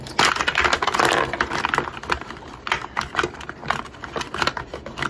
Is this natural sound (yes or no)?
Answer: yes